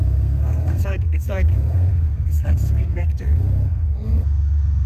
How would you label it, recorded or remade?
remade